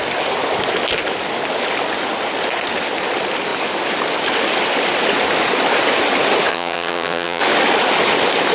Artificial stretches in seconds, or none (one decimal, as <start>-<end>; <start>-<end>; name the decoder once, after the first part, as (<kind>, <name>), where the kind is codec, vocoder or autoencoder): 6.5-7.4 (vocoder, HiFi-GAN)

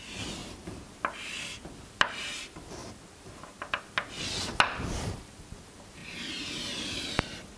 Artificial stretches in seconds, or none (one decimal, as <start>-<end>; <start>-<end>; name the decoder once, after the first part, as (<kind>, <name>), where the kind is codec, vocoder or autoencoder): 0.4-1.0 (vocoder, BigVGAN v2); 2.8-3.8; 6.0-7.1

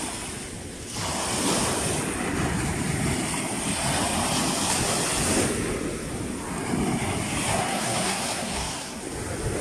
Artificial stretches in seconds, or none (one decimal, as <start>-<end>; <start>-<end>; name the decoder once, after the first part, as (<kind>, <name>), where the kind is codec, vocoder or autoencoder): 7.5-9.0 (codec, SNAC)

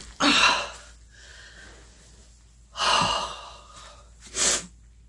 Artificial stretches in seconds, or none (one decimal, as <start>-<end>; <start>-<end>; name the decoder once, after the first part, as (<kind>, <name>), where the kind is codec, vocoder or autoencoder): none

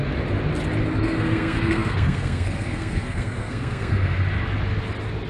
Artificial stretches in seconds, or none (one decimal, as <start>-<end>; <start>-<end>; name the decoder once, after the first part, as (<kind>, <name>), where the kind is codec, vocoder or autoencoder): 1.0-4.2 (codec, SNAC)

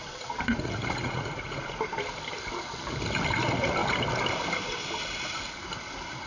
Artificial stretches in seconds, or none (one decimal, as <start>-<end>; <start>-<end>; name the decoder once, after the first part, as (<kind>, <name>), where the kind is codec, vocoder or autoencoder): 0.5-1.8 (vocoder, Vocos)

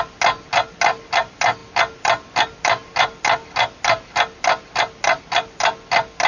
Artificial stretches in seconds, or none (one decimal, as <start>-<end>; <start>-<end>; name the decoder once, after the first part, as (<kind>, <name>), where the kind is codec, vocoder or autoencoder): none

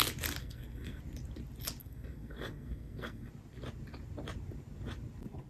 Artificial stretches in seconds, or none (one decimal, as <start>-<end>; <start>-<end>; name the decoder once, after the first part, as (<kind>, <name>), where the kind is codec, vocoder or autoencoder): 0.4-1.0 (codec, SNAC); 1.8-3.3